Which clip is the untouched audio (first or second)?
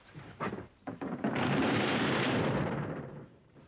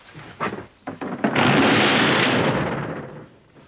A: second